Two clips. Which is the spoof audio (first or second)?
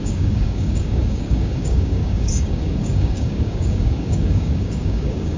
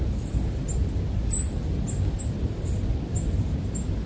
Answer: first